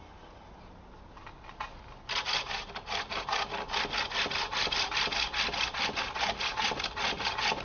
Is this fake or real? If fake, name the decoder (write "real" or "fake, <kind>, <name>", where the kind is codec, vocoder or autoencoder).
real